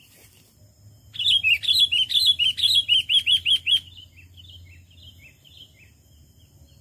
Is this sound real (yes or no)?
yes